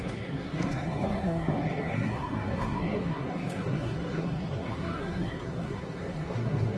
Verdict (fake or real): fake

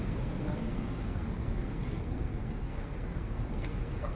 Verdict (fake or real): fake